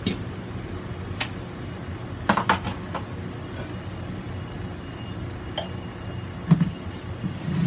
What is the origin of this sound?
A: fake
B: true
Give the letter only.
B